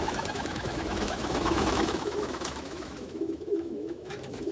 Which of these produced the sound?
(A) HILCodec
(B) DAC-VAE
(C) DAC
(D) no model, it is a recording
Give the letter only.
B